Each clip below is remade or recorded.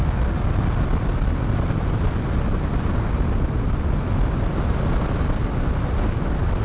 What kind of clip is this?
recorded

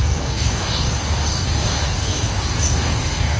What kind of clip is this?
remade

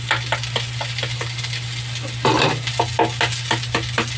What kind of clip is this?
recorded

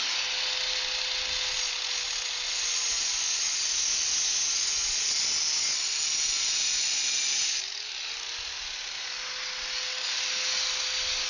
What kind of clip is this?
recorded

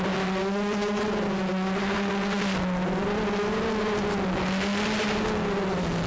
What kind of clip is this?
recorded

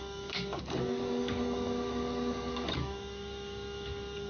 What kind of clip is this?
remade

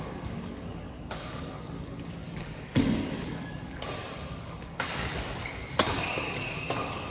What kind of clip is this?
remade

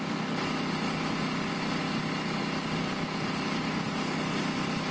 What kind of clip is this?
recorded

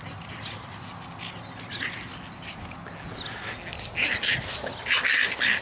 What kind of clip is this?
recorded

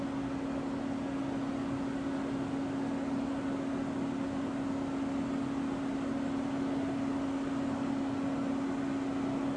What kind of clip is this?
recorded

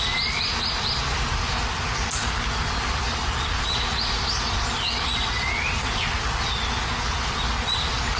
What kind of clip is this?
recorded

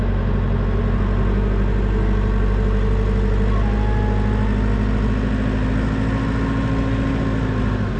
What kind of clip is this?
recorded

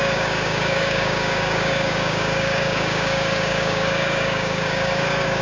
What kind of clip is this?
remade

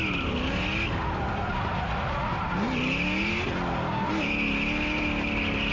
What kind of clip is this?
recorded